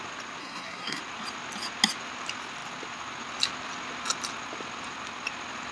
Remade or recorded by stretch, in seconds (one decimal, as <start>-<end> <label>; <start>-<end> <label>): 0.0-0.4 recorded; 0.4-1.0 remade; 1.0-5.7 recorded